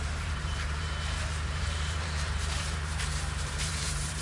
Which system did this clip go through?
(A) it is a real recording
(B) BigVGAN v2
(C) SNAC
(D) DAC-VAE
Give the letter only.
B